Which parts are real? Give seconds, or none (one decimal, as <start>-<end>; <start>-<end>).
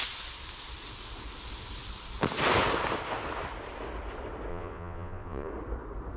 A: 0.0-4.5; 5.5-6.2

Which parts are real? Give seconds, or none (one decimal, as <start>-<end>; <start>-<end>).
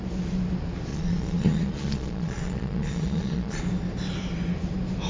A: 0.0-0.9; 3.6-5.1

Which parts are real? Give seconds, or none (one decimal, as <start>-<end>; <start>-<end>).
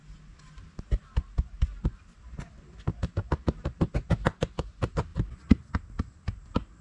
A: 0.0-6.8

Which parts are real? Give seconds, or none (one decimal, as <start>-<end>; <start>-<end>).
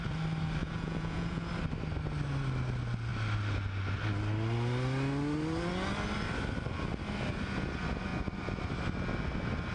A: 0.0-0.6; 1.5-9.7